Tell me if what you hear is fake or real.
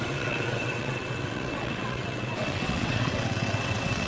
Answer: fake